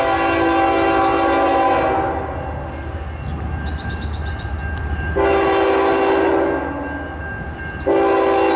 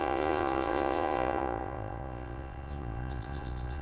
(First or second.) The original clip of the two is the first